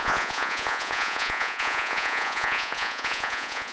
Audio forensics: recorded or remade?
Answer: remade